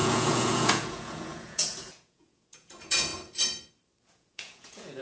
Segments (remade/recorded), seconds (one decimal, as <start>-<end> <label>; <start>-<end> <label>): 0.0-3.1 remade; 3.1-4.1 recorded; 4.1-5.0 remade